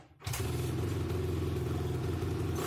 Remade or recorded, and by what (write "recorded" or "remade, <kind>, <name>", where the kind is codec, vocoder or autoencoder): recorded